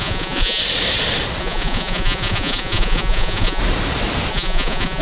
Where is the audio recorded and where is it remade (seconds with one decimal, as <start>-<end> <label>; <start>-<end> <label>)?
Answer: 0.0-0.6 remade; 0.6-1.4 recorded; 1.4-3.6 remade; 3.6-4.3 recorded; 4.3-5.0 remade